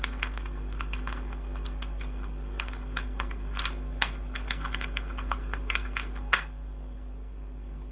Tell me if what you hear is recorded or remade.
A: remade